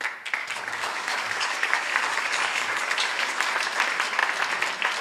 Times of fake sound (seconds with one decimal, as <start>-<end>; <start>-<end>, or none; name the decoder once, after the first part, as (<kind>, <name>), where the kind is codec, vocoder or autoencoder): 0.4-3.4 (codec, DAC)